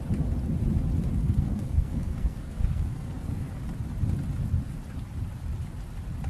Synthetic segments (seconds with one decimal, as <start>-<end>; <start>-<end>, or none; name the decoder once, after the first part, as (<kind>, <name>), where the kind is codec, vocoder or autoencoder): 1.2-3.6 (codec, SNAC)